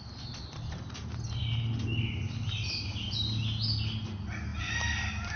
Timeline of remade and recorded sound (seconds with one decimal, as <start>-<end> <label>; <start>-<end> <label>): 0.0-5.4 recorded